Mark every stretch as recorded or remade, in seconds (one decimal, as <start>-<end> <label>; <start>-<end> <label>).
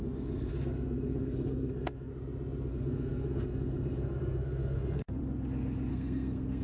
0.0-2.1 remade; 2.1-2.7 recorded; 2.7-5.2 remade; 5.2-5.9 recorded; 5.9-6.6 remade